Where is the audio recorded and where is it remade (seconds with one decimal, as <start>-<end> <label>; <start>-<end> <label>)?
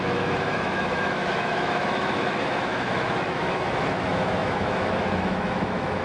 0.0-6.0 remade